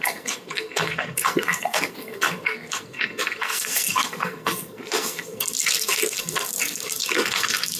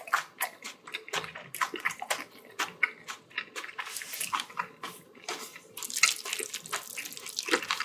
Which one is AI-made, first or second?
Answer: first